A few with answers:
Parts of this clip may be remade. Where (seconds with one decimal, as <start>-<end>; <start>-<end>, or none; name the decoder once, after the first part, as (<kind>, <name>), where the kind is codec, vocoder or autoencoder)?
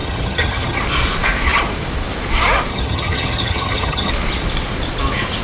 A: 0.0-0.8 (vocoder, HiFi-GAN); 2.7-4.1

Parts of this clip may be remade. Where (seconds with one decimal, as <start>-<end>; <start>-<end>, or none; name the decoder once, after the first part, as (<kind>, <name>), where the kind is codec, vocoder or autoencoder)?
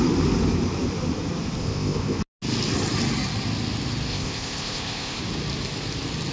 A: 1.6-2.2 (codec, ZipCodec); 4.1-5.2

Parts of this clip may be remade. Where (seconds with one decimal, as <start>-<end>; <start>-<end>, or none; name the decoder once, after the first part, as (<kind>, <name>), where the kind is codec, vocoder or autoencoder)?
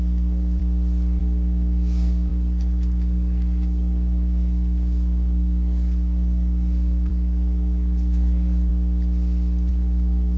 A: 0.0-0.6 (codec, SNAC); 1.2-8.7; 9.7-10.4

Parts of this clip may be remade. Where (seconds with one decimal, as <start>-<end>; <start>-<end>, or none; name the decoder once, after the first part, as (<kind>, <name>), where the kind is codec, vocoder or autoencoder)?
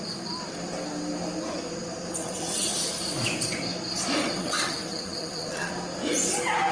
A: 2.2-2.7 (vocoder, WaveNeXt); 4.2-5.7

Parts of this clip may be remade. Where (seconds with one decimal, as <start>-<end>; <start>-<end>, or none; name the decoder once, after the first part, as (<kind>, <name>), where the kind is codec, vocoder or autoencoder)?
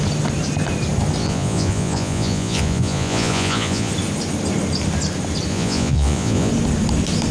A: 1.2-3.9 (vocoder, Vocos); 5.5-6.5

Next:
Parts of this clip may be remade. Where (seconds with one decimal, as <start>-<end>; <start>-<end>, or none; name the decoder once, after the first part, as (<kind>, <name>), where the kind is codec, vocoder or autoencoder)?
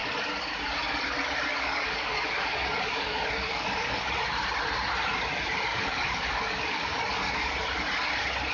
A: 1.5-4.1 (codec, DAC); 5.7-7.5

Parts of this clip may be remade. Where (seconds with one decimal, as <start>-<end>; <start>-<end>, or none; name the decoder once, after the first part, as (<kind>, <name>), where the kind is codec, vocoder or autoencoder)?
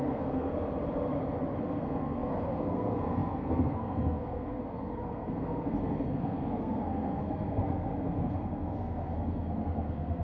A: 0.0-0.5 (codec, SNAC); 1.6-10.2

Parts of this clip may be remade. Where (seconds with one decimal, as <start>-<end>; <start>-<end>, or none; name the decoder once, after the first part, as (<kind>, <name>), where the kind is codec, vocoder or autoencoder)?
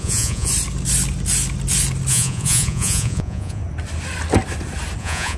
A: 0.0-0.5 (vocoder, Vocos); 2.1-3.6; 5.0-5.4